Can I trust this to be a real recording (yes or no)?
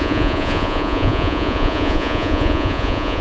no